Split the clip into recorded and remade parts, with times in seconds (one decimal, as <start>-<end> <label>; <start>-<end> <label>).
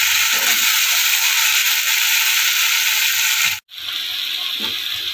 0.0-5.1 recorded